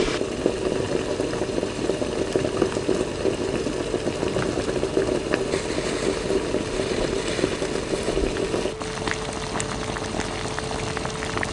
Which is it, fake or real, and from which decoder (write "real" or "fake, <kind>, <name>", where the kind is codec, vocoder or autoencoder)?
real